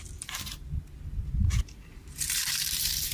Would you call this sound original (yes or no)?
no